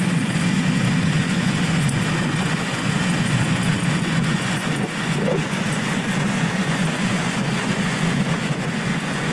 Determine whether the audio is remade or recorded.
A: remade